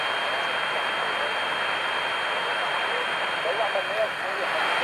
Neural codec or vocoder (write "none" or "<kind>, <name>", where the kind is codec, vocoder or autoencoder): none